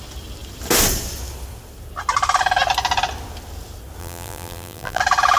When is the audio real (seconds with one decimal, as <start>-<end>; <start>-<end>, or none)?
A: 0.0-4.0; 5.0-5.4

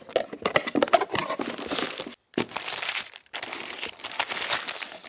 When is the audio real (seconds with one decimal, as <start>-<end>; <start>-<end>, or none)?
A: 0.0-1.2; 3.8-5.1

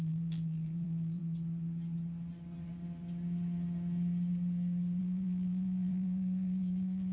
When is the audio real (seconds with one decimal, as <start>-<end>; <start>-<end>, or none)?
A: 1.2-5.0

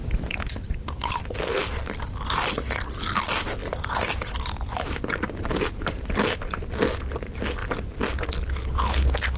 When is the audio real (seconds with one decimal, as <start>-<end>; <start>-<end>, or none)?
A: 1.2-3.6; 6.1-9.4

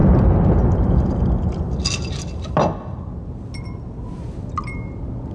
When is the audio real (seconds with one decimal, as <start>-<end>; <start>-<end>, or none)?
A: 3.2-5.3

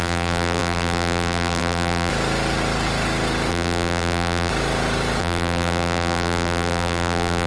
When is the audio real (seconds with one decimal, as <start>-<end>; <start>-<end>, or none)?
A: 2.1-3.5; 4.5-5.2

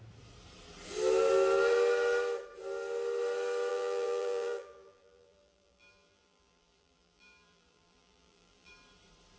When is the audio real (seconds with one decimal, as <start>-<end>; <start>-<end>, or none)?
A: 0.0-3.7; 8.7-9.4

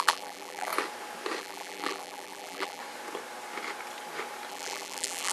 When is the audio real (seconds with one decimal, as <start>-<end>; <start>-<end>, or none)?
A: 0.7-1.4; 2.8-4.5